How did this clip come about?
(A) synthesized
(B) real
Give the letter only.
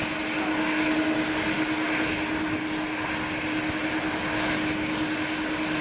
B